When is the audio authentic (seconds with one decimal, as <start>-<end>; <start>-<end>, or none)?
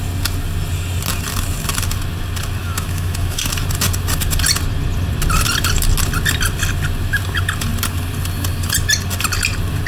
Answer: 0.0-2.6; 3.5-9.9